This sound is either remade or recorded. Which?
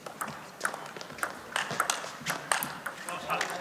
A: recorded